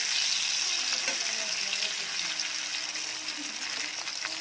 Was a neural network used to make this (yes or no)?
no